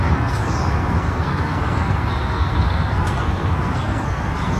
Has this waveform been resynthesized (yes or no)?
yes